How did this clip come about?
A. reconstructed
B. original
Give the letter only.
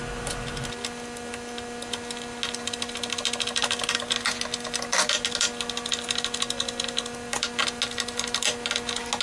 B